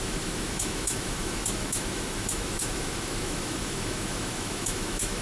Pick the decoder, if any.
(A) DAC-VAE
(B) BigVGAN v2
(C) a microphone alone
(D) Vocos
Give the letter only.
A